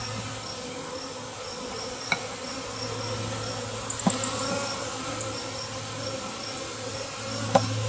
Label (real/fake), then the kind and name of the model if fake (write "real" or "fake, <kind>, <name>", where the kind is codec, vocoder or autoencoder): real